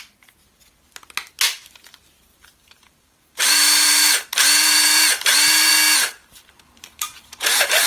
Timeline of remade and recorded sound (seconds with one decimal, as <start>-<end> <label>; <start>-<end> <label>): 0.0-2.3 recorded; 2.3-5.7 remade; 5.7-6.2 recorded; 6.2-7.9 remade